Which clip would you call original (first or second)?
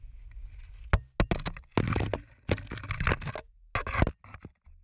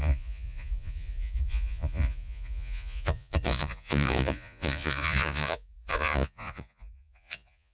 first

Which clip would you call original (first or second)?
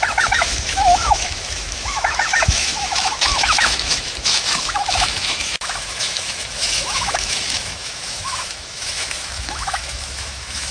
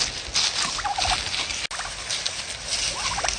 second